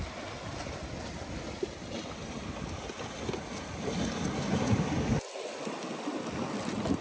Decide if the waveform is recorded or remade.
recorded